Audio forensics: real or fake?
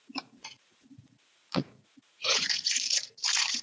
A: fake